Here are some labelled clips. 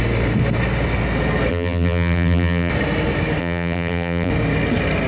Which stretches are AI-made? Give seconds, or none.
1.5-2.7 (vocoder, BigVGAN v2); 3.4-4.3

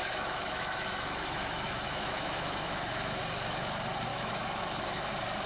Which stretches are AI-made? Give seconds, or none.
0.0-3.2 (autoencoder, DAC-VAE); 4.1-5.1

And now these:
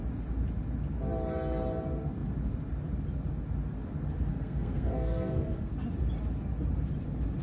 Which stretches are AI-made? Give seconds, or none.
4.3-5.7 (codec, SNAC)

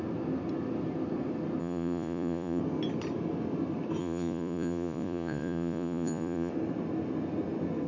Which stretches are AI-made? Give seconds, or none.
1.6-2.6 (vocoder, Vocos); 4.0-6.5